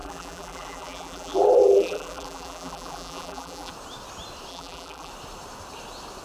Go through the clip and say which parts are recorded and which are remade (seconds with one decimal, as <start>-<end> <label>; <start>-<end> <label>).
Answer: 0.0-3.7 remade; 3.7-4.5 recorded; 4.5-5.1 remade; 5.1-6.2 recorded